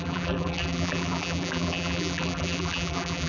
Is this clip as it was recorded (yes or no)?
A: no